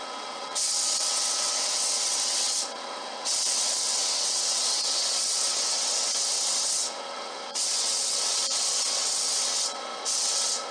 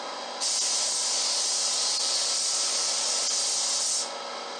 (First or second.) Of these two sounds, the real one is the second